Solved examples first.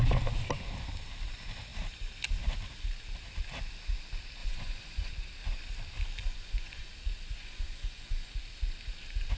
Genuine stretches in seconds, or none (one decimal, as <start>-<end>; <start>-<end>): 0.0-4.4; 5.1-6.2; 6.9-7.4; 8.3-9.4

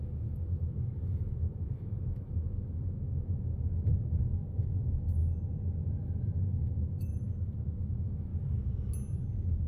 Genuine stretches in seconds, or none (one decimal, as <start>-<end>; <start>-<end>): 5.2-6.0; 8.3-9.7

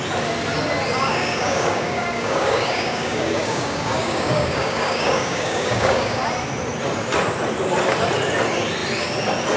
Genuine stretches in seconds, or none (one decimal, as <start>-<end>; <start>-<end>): 0.0-1.1; 6.2-9.6

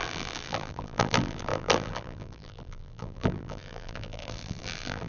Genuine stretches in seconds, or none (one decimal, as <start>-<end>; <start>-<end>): none